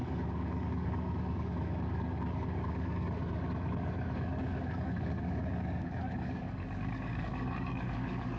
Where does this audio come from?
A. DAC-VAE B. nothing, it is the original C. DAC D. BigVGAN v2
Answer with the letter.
C